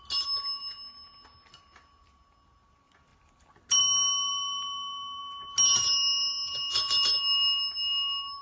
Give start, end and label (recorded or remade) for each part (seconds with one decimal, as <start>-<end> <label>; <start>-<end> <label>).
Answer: 0.0-8.4 recorded